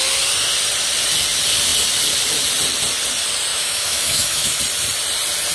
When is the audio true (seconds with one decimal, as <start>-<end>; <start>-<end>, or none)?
0.0-3.5; 4.6-5.5